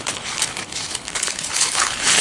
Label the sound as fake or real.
fake